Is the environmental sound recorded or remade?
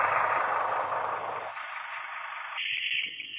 recorded